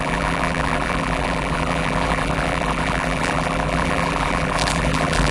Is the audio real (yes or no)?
no